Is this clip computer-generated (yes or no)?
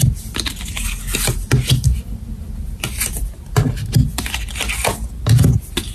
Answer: no